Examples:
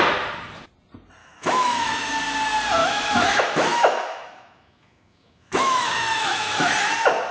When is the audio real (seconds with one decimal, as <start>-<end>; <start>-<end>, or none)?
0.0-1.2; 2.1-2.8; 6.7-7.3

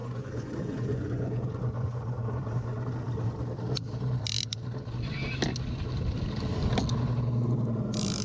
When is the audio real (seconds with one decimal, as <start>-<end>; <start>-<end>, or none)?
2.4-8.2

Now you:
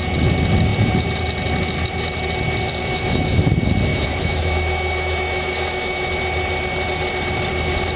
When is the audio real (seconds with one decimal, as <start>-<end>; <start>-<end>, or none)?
0.0-2.8; 3.4-3.9; 6.1-8.0

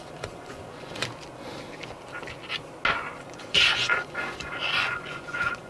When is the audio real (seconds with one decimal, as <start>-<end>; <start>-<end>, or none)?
1.0-3.2

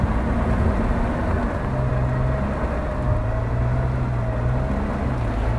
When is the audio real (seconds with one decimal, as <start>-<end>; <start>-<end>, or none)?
0.0-5.6

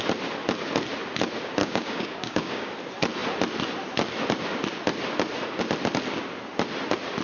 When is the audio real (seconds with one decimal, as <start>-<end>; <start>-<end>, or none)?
0.0-1.6; 2.7-7.2